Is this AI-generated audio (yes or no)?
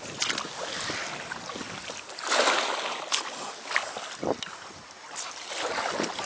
no